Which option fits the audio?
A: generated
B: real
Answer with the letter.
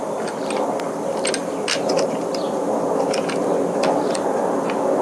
B